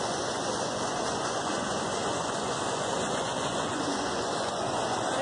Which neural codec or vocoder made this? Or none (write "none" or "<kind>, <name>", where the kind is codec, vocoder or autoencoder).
vocoder, Vocos